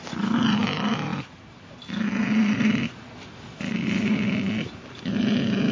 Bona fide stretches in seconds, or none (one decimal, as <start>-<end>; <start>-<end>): 0.0-5.7